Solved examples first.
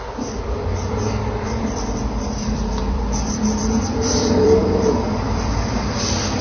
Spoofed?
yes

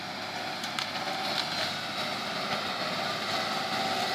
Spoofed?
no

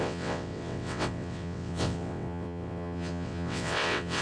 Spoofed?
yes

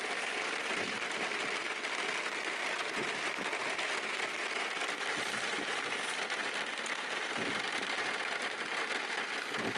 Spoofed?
no